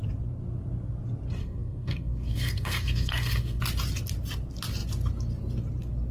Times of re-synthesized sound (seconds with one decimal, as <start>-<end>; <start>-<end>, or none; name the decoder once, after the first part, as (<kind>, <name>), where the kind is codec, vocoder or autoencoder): 1.4-3.6 (codec, SNAC)